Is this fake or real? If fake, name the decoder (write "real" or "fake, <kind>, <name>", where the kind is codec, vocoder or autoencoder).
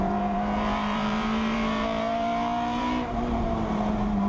fake, vocoder, BigVGAN v2